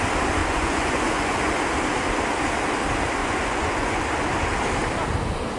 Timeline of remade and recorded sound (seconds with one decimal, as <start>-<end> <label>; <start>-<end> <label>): 0.0-0.4 recorded; 0.4-1.5 remade; 1.5-3.2 recorded; 3.2-4.0 remade; 4.0-5.6 recorded